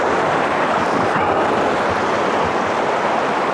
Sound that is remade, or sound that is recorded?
recorded